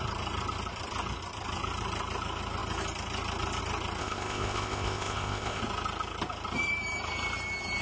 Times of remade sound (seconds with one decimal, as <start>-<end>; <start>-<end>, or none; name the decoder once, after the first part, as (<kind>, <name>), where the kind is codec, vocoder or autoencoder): 4.0-5.6 (codec, ZipCodec)